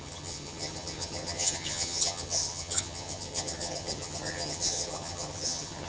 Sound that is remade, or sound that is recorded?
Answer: remade